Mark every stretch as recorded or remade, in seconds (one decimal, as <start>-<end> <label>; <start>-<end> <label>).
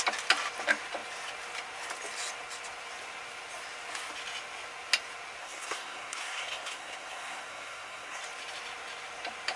0.0-5.4 recorded; 5.4-8.2 remade; 8.2-9.6 recorded